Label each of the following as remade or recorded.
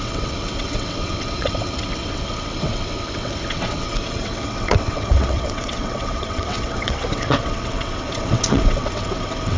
remade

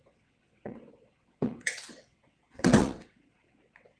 remade